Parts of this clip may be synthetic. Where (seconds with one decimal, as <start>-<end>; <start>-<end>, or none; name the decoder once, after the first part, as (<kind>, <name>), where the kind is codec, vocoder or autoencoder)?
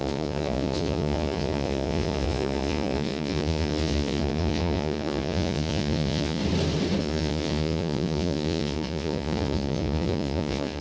0.0-6.4 (vocoder, Vocos); 7.0-10.8